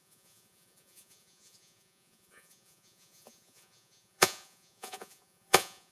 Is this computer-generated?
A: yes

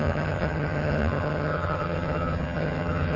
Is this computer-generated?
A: yes